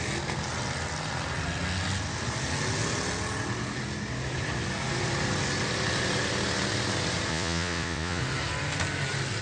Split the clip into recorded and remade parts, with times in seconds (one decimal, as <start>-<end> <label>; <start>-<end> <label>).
0.0-7.3 recorded; 7.3-8.2 remade; 8.2-9.4 recorded